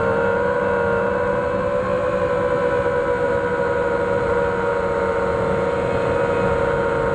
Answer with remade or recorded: recorded